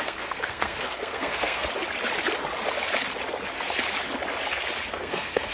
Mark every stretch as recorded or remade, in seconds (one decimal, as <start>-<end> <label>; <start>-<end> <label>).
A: 0.0-1.6 remade; 1.6-4.9 recorded; 4.9-5.5 remade